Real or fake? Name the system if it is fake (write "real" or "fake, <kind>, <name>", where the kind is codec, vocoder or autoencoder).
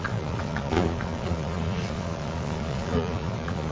fake, vocoder, Vocos